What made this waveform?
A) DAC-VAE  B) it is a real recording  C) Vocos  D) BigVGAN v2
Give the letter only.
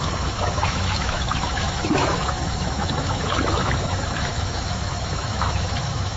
A